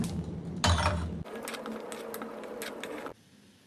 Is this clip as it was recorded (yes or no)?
yes